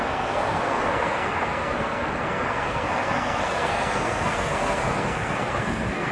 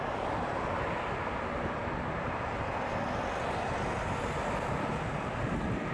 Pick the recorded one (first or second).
second